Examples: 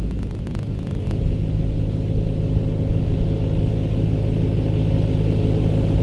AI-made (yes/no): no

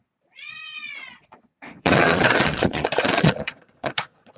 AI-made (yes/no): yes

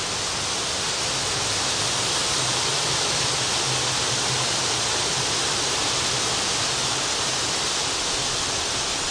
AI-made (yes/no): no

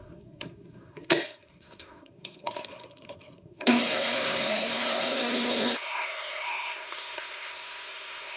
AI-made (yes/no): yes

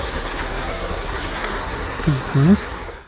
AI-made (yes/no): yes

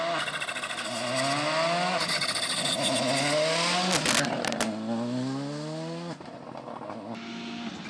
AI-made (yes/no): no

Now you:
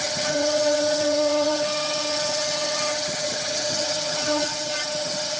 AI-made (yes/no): yes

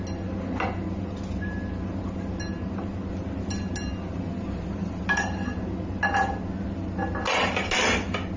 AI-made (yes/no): no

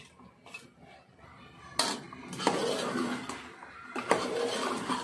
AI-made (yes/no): no